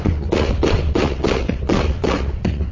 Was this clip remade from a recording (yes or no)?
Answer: yes